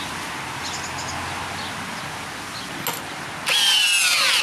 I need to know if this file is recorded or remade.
recorded